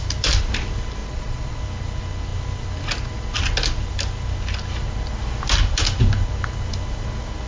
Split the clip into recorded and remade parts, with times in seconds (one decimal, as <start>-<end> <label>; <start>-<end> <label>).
0.0-1.0 recorded; 1.0-1.6 remade; 1.6-7.5 recorded